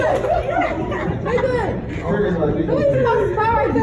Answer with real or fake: real